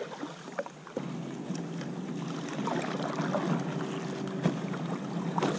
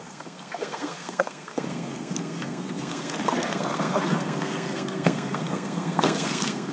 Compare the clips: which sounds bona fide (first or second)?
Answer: first